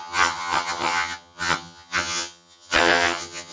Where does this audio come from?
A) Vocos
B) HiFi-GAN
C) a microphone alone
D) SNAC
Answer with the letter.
B